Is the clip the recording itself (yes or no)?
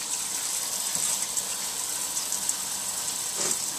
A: yes